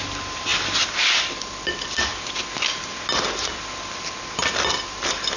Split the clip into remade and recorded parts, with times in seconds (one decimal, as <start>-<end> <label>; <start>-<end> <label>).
0.0-5.4 recorded